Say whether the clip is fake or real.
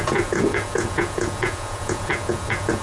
fake